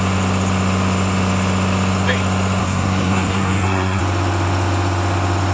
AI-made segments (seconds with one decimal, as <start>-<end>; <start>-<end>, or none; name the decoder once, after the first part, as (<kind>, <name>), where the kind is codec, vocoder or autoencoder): 2.6-4.0 (codec, SNAC)